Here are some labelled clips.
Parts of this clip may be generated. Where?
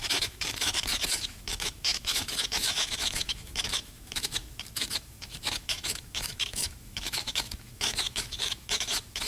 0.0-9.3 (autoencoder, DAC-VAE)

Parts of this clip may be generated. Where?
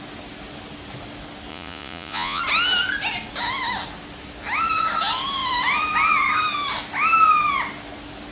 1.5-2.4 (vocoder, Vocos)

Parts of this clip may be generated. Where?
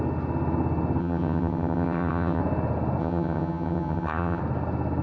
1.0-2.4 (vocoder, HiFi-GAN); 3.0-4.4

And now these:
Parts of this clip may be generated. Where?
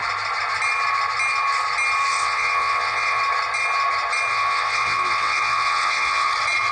2.1-3.2 (vocoder, WaveNeXt); 4.3-6.3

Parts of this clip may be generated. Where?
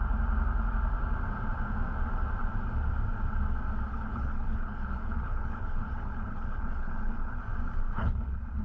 3.9-7.4 (codec, HILCodec); 7.9-8.6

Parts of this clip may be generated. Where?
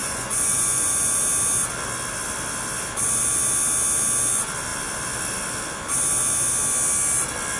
0.0-1.2 (vocoder, Vocos)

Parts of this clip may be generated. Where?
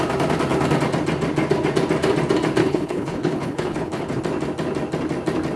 2.6-4.2 (codec, HILCodec)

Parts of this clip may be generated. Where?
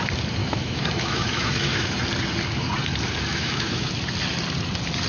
0.4-1.9 (autoencoder, DAC-VAE); 3.3-3.9